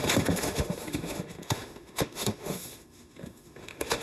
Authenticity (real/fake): fake